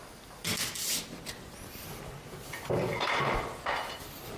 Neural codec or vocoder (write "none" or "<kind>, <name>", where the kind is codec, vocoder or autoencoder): none